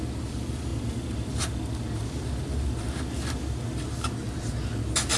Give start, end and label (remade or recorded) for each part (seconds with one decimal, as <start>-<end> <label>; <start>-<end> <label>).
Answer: 0.0-5.2 recorded